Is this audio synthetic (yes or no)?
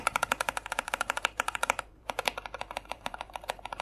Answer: yes